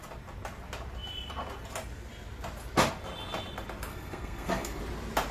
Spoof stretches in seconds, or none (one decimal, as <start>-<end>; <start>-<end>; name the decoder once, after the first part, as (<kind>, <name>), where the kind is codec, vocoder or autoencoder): 3.9-4.8 (codec, SNAC)